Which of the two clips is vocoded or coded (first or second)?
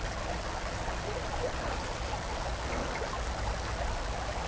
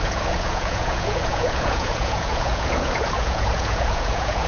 second